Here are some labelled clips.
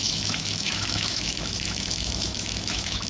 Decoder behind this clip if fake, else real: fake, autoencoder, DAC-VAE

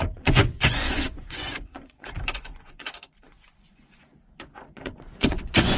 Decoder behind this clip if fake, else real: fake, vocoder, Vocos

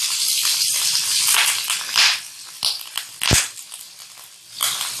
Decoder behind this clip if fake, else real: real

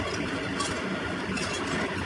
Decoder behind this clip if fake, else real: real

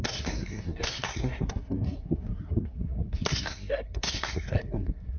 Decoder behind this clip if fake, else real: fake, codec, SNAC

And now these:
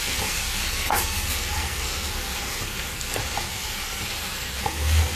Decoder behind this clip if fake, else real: fake, codec, SNAC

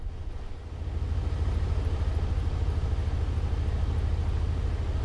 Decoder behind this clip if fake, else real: real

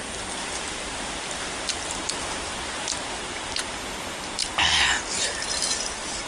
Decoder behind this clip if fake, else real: fake, vocoder, BigVGAN v2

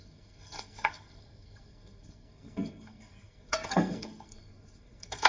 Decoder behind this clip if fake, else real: fake, codec, SNAC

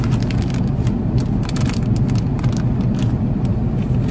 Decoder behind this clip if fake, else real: real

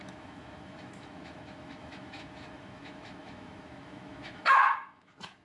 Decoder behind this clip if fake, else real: fake, autoencoder, DAC-VAE